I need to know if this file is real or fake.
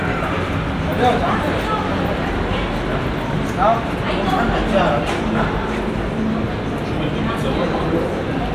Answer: real